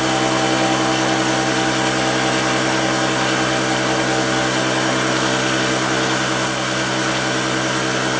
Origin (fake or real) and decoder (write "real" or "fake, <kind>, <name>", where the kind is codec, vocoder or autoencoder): real